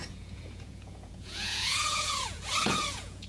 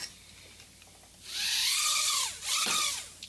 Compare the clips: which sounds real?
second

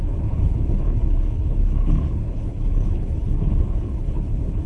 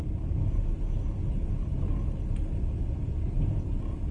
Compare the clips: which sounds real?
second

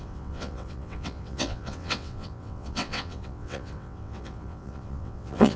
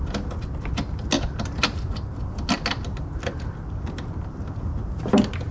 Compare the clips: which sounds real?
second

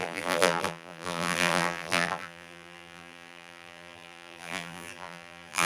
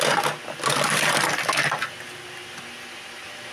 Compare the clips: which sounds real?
second